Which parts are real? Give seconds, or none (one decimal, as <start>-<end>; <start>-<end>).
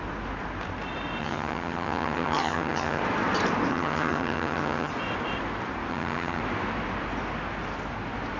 0.0-1.2; 3.0-3.7; 4.9-5.9; 6.4-8.4